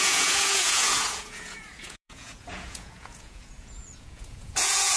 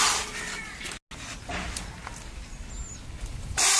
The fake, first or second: first